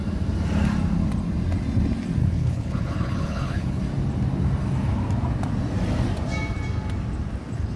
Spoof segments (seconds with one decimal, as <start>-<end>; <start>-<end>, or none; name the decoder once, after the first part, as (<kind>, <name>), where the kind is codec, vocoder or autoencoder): 2.2-3.8 (codec, HILCodec)